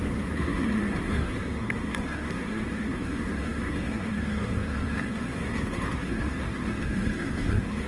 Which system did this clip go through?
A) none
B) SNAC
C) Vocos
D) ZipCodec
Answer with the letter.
B